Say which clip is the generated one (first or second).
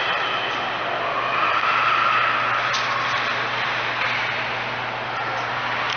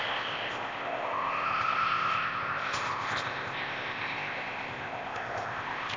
second